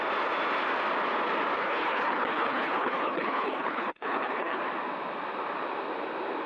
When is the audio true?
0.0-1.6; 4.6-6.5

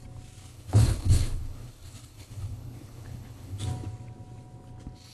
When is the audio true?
0.0-0.5; 3.6-5.1

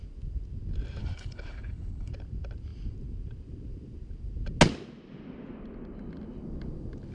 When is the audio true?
0.0-1.0; 2.1-7.1

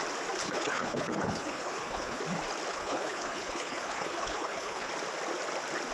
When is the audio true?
0.0-0.4; 2.2-2.7; 4.9-5.9

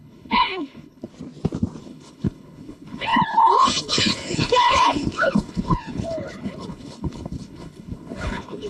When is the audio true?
1.1-1.8